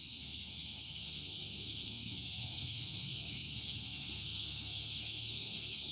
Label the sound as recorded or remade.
remade